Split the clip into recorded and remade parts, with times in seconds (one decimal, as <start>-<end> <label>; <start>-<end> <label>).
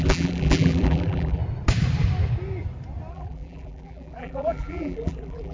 0.0-1.4 remade; 1.4-3.1 recorded; 3.1-5.5 remade